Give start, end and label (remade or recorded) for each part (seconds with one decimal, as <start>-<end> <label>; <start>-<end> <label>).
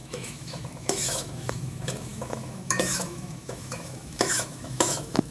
0.0-5.3 remade